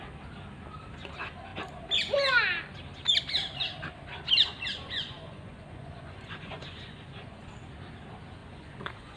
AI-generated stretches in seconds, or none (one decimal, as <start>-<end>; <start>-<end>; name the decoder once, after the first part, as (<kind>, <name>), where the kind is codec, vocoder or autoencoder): 4.7-7.5 (vocoder, Vocos); 8.4-9.2